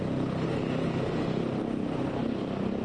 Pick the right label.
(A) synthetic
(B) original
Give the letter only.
B